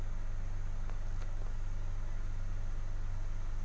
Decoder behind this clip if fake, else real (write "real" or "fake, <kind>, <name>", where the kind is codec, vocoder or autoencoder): real